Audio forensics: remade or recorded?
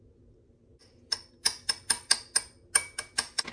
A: recorded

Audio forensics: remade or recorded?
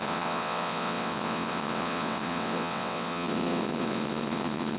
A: remade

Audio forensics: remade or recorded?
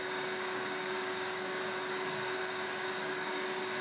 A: remade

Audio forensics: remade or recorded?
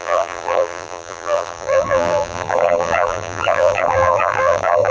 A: remade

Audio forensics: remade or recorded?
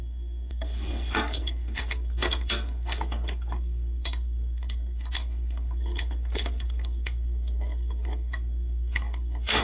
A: remade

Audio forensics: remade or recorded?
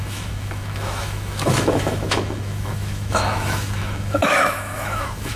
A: remade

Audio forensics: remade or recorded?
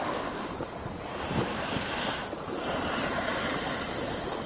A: recorded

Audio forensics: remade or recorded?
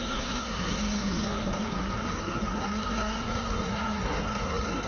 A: remade